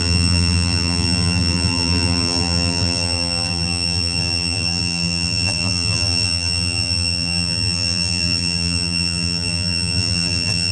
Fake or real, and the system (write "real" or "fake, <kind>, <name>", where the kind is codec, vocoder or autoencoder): fake, vocoder, BigVGAN v2